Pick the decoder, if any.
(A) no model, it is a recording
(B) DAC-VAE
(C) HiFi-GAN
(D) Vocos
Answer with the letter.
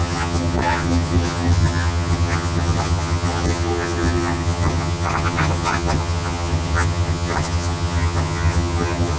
C